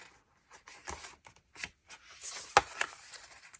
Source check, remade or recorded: recorded